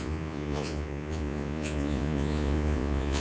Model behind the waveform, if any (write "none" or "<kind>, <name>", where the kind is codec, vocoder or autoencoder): vocoder, Vocos